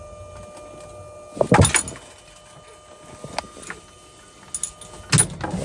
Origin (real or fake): real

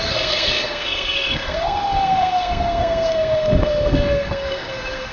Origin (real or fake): fake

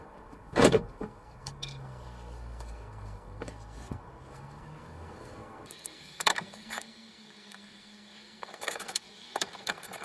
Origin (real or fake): fake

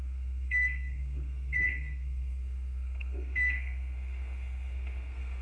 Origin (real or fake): fake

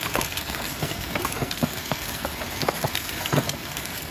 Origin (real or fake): fake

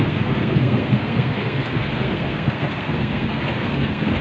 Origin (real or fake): fake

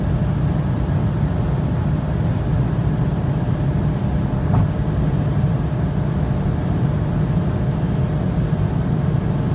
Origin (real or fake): real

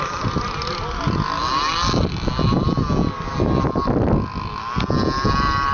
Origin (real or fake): real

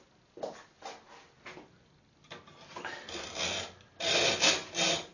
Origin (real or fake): real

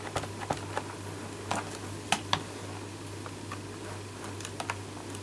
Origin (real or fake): real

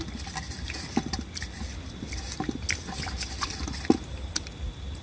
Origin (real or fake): real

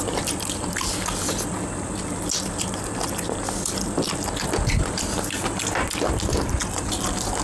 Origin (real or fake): real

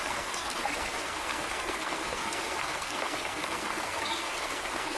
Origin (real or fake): fake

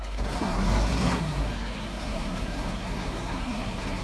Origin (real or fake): fake